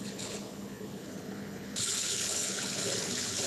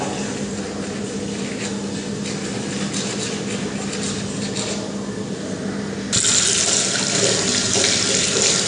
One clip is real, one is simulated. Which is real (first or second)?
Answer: second